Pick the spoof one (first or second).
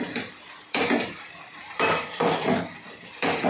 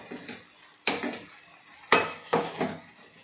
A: first